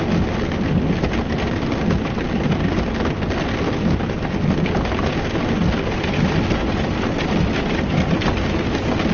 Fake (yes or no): no